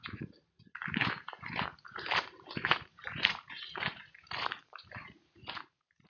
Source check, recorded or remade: remade